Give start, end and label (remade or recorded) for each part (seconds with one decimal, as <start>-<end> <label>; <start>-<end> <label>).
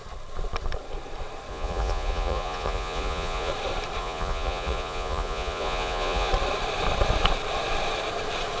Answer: 0.0-1.5 recorded; 1.5-3.5 remade; 3.5-4.0 recorded; 4.0-6.3 remade; 6.3-8.6 recorded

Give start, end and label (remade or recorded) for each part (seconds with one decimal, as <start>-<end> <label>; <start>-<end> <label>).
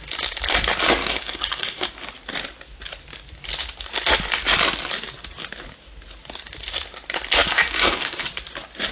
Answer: 0.0-1.0 recorded; 1.0-1.9 remade; 1.9-7.4 recorded; 7.4-8.2 remade; 8.2-8.9 recorded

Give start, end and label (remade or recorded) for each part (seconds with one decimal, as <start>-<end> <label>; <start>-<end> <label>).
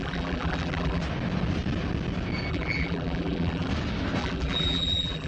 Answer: 0.0-1.0 remade; 1.0-2.5 recorded; 2.5-3.7 remade; 3.7-4.2 recorded; 4.2-5.3 remade